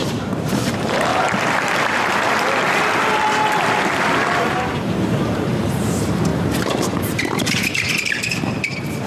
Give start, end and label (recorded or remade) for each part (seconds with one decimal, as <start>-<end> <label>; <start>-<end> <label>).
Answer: 0.0-1.1 remade; 1.1-4.5 recorded; 4.5-9.1 remade